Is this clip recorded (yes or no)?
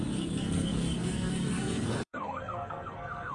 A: no